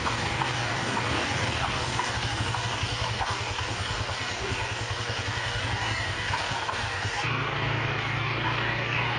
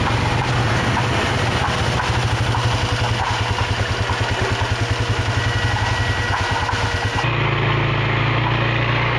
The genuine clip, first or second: second